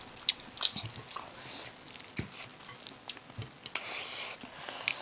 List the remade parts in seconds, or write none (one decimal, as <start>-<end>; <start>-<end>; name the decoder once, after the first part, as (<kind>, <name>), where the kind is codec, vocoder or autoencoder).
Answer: none